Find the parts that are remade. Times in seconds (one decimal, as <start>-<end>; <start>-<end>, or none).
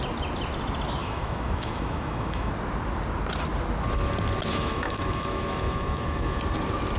1.0-2.5; 4.5-6.4